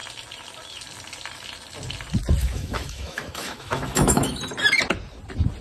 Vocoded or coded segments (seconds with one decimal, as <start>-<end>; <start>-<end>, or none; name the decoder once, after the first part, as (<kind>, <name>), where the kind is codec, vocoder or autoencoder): 2.4-4.4 (autoencoder, DAC-VAE)